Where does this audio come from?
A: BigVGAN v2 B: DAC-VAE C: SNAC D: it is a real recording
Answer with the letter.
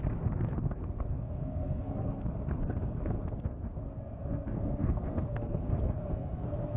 C